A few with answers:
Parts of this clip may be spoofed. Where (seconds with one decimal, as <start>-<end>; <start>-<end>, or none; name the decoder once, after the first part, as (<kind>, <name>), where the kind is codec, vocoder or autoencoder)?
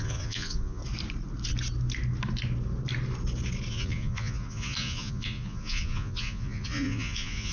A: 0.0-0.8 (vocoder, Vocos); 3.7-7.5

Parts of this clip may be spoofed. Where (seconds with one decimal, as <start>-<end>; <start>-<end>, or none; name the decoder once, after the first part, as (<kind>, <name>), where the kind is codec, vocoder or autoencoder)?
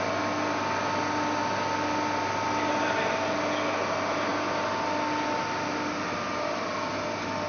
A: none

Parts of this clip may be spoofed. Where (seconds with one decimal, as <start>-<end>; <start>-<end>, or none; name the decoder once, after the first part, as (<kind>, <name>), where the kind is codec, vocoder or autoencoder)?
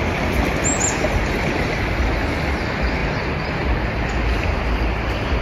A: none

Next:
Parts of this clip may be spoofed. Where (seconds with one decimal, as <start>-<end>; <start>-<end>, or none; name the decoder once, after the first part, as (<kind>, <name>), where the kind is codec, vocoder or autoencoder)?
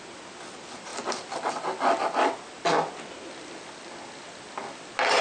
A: none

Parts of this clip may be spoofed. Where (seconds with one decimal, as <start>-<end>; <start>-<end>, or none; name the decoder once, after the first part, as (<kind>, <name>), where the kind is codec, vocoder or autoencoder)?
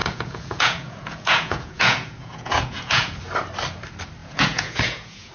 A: 0.0-3.2 (vocoder, Vocos); 4.2-5.3